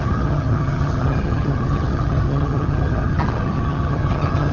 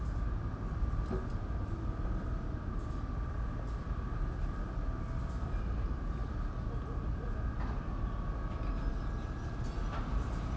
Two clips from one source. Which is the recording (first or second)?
second